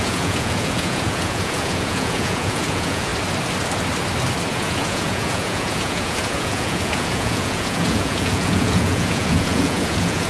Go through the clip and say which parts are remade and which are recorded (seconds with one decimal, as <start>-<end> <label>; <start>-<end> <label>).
0.0-3.1 remade; 3.1-4.5 recorded; 4.5-10.3 remade